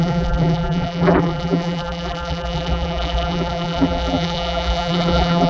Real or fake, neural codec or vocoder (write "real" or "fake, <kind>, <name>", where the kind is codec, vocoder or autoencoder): fake, vocoder, BigVGAN v2